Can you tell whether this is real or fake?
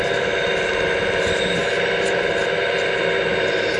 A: real